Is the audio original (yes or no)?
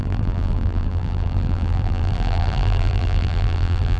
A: no